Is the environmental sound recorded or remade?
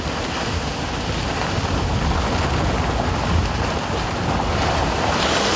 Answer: recorded